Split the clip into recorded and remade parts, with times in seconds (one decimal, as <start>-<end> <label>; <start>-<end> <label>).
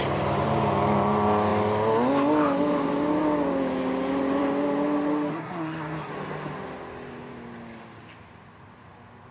0.0-5.3 recorded; 5.3-6.1 remade; 6.1-9.3 recorded